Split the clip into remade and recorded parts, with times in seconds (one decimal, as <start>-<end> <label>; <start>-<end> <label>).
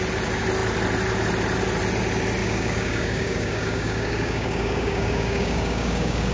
0.0-2.4 recorded; 2.4-6.3 remade